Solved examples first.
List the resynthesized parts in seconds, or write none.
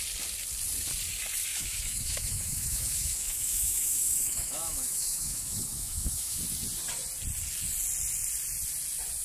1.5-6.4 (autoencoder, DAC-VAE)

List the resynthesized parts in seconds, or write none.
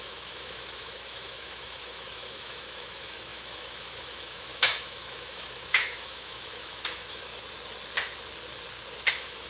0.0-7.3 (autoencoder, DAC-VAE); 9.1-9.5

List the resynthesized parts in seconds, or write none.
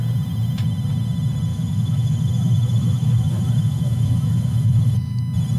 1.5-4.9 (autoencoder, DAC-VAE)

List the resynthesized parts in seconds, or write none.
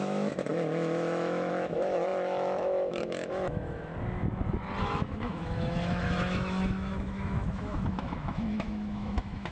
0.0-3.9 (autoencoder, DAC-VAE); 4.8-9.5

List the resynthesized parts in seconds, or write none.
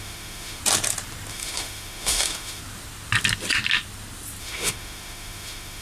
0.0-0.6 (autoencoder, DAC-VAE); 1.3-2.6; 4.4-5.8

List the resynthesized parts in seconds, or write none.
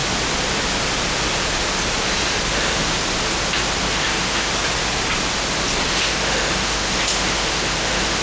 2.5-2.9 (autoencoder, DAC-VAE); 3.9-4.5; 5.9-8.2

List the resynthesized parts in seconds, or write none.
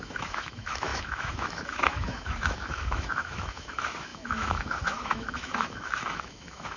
0.0-6.8 (autoencoder, DAC-VAE)